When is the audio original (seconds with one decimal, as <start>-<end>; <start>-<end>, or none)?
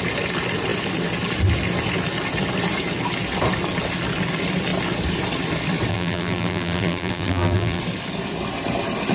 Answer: 0.0-5.9; 7.8-9.1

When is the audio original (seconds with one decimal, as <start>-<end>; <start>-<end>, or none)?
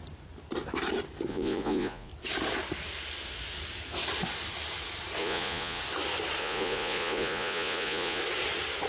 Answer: 0.0-1.3; 2.1-5.2; 5.8-6.4; 8.2-8.9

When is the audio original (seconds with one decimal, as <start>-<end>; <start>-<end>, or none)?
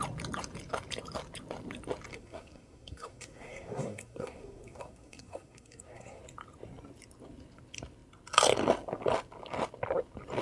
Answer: 0.0-2.1; 6.2-10.4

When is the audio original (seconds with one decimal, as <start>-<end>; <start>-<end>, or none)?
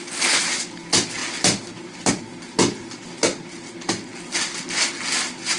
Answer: 0.0-5.6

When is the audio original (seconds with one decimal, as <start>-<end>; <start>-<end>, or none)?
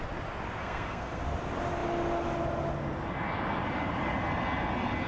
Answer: 0.0-0.6; 1.2-5.1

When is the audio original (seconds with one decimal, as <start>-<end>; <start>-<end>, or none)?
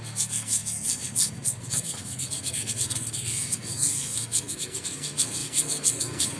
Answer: none